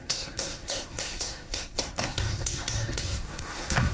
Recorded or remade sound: remade